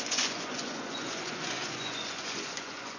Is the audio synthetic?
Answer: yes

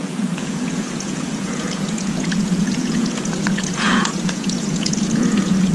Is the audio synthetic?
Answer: yes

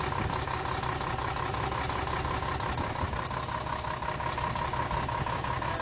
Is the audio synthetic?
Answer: no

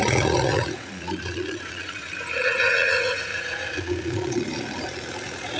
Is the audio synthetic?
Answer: yes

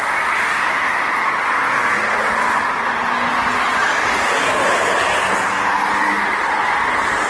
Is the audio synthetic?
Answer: no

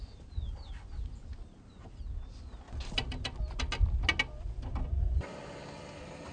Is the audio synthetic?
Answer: no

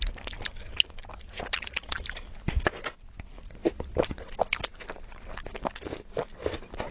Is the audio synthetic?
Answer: no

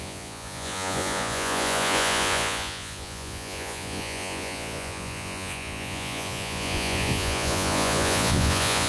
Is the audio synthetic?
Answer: yes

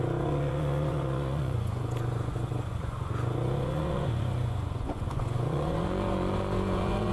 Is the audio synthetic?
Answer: yes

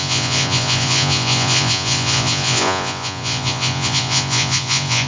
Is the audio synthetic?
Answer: yes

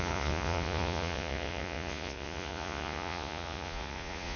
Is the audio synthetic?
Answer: yes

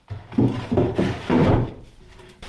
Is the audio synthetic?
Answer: no